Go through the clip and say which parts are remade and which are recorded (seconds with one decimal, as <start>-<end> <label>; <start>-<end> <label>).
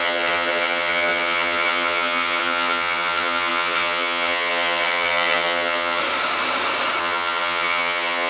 0.0-6.0 remade; 6.0-7.0 recorded; 7.0-8.3 remade